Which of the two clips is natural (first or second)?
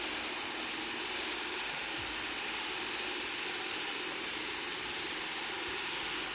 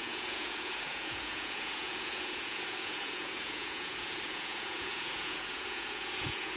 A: first